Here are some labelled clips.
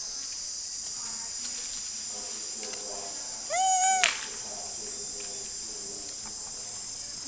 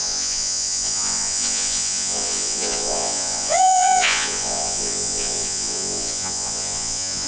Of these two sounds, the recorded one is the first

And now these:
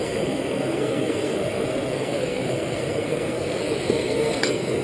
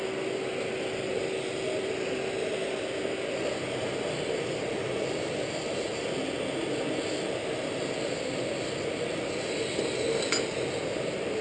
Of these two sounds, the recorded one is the second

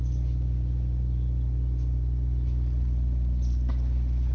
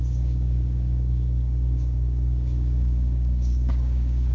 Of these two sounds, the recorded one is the first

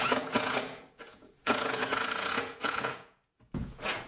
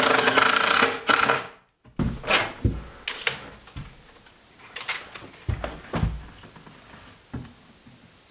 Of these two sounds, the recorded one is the second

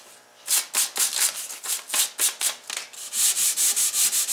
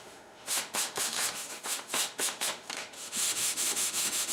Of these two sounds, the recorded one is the first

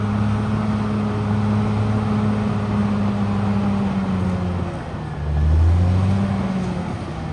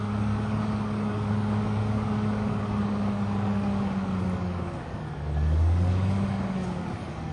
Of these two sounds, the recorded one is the first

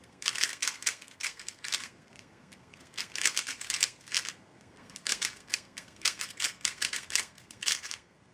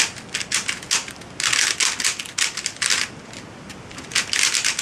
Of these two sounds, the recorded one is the second